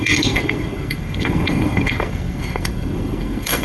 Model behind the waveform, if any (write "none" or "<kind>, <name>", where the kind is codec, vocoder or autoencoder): codec, SNAC